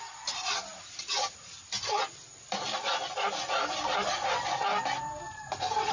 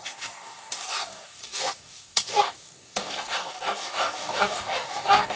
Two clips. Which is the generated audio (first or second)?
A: second